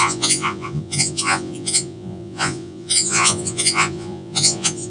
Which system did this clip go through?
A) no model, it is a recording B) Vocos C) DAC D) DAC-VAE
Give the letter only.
B